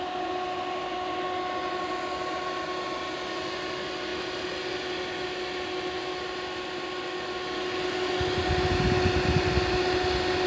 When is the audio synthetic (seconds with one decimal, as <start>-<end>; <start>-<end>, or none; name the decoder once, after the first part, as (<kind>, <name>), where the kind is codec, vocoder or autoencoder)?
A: none